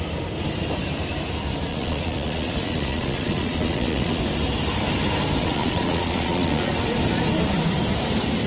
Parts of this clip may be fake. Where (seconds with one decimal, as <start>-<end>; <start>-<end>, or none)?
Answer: 1.7-4.2; 5.4-6.7

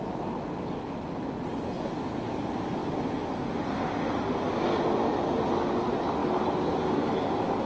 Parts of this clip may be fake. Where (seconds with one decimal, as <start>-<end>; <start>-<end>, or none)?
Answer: none

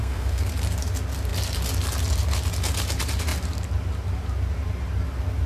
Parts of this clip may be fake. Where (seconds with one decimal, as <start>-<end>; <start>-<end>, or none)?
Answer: 0.0-0.5